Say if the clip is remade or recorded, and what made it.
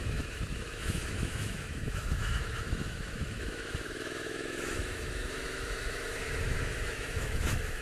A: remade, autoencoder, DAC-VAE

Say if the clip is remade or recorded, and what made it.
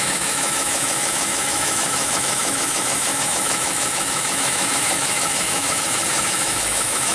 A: remade, autoencoder, DAC-VAE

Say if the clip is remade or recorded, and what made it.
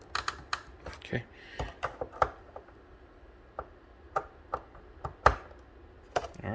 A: recorded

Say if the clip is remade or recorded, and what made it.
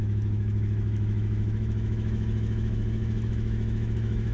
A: remade, autoencoder, DAC-VAE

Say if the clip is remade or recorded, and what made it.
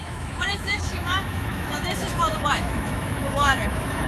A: remade, autoencoder, DAC-VAE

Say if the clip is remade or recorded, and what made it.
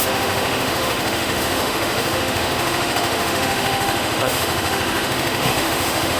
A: remade, autoencoder, DAC-VAE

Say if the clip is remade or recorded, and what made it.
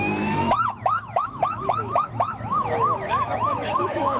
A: remade, autoencoder, DAC-VAE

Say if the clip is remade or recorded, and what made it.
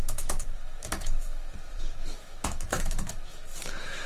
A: remade, autoencoder, DAC-VAE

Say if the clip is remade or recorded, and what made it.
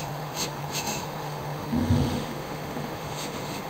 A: remade, autoencoder, DAC-VAE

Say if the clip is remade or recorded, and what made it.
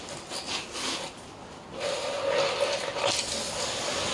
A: recorded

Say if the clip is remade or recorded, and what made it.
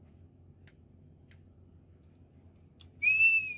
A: recorded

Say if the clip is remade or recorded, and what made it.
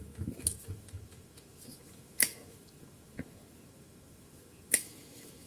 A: remade, autoencoder, DAC-VAE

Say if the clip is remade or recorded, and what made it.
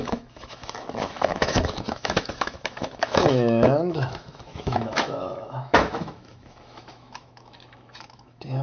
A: remade, autoencoder, DAC-VAE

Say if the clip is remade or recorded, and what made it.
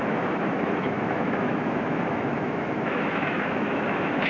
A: remade, autoencoder, DAC-VAE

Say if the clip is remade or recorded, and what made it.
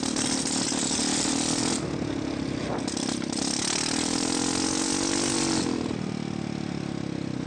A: recorded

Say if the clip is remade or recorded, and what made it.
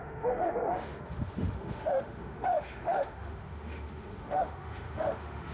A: remade, autoencoder, DAC-VAE